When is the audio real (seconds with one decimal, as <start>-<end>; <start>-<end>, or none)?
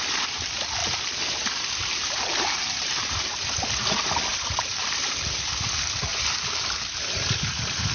0.0-0.8; 3.5-4.3; 5.0-6.1; 7.0-7.9